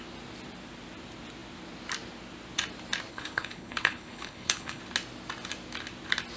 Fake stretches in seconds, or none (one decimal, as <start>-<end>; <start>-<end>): 3.1-4.8